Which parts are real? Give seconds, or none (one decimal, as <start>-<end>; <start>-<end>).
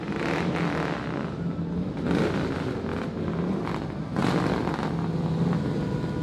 0.0-6.2